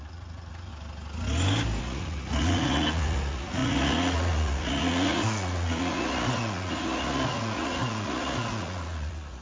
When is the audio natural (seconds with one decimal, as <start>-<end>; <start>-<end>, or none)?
0.7-1.8